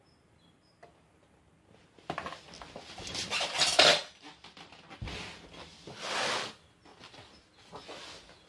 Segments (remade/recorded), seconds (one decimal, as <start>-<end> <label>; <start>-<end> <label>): 0.0-8.5 recorded